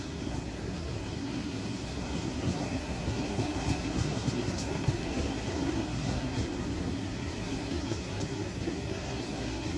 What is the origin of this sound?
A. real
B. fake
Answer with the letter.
B